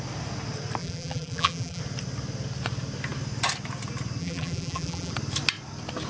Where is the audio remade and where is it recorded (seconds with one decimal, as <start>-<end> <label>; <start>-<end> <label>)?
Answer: 0.0-0.8 recorded; 0.8-1.8 remade; 1.8-4.2 recorded; 4.2-5.1 remade; 5.1-6.1 recorded